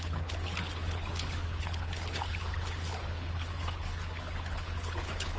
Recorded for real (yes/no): no